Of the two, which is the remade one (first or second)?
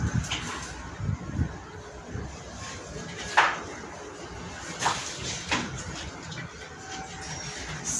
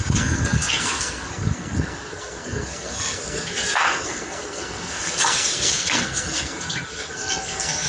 second